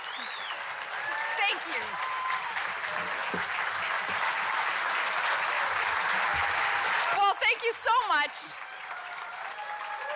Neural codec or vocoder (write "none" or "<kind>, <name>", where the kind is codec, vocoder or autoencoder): none